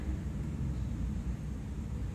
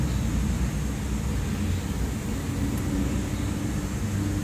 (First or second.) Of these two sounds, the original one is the second